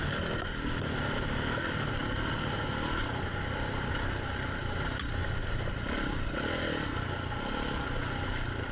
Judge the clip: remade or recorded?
recorded